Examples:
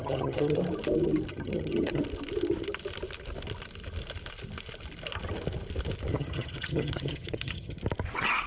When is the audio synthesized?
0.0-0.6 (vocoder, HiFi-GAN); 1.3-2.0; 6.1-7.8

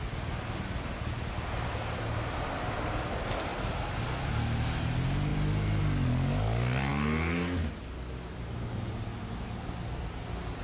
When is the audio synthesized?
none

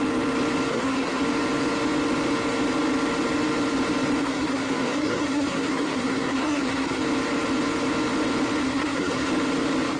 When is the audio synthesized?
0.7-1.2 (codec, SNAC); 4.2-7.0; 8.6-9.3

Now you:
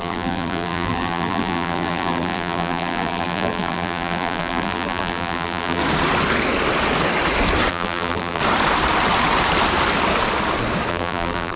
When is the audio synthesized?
0.0-5.8 (vocoder, BigVGAN v2); 7.7-8.4; 10.9-11.6